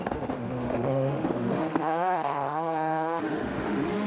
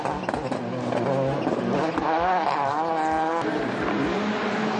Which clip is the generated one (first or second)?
first